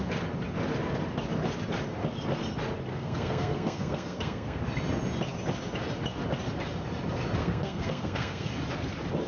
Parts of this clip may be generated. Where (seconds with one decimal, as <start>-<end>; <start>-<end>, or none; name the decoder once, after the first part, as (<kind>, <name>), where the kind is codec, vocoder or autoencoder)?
2.9-4.6 (codec, SNAC); 7.4-8.5